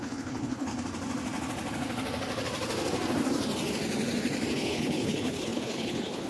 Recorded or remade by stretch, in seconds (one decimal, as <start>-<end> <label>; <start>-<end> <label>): 0.0-0.7 remade; 0.7-4.5 recorded; 4.5-6.3 remade

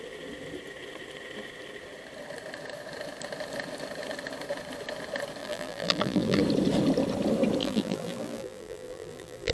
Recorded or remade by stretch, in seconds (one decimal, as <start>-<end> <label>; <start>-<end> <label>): 0.0-5.4 recorded; 5.4-6.4 remade; 6.4-7.6 recorded; 7.6-9.5 remade

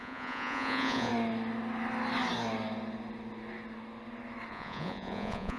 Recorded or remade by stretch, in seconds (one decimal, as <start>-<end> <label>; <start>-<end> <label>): 0.0-1.1 remade; 1.1-4.5 recorded; 4.5-5.6 remade

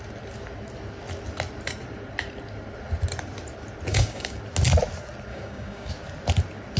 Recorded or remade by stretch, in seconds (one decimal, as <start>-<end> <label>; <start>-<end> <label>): 0.0-3.9 recorded; 3.9-4.4 remade; 4.4-5.3 recorded; 5.3-5.9 remade; 5.9-6.8 recorded

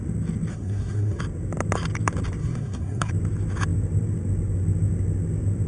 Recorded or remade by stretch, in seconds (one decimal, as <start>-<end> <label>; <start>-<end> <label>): 0.0-0.5 recorded; 0.5-1.2 remade; 1.2-2.4 recorded; 2.4-3.1 remade; 3.1-5.7 recorded

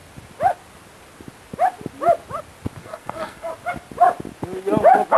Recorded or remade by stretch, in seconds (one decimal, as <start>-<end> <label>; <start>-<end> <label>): 0.0-2.8 recorded; 2.8-3.5 remade; 3.5-5.2 recorded

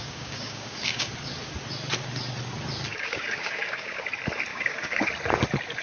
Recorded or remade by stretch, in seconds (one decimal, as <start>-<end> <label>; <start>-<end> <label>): 0.0-1.1 remade; 1.1-2.9 recorded; 2.9-4.1 remade; 4.1-4.5 recorded; 4.5-5.1 remade; 5.1-5.8 recorded

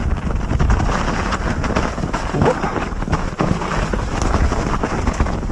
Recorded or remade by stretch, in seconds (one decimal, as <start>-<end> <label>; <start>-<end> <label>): 0.0-5.5 recorded